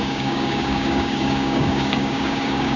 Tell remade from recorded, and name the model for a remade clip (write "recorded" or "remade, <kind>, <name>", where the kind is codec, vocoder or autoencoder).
remade, codec, DAC